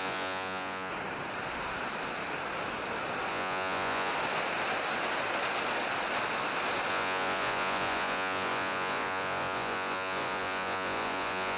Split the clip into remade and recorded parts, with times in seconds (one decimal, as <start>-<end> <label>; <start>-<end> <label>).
0.0-0.9 remade; 0.9-3.3 recorded; 3.3-4.1 remade; 4.1-6.9 recorded; 6.9-11.6 remade